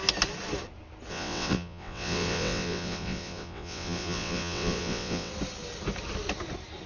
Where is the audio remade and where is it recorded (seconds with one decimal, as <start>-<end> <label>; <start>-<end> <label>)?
0.0-1.1 recorded; 1.1-5.3 remade; 5.3-6.9 recorded